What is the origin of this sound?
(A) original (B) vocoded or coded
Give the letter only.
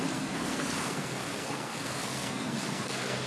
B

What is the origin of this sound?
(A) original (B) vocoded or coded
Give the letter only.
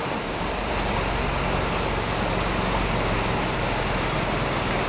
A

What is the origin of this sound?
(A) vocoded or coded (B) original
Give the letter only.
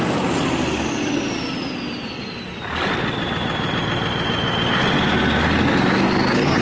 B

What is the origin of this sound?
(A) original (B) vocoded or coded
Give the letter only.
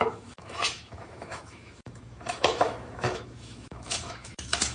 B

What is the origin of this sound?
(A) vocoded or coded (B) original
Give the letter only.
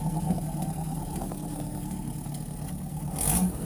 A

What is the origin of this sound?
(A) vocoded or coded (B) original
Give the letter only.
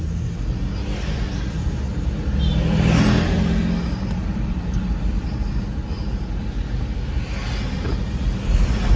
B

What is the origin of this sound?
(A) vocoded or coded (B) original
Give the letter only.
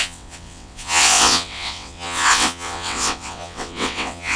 A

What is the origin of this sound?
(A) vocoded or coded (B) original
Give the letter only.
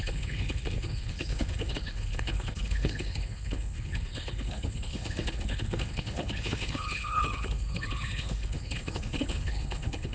A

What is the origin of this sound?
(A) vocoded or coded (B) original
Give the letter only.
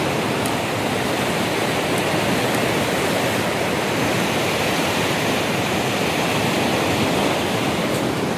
B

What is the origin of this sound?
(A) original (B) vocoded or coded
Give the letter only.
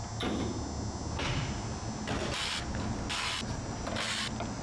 A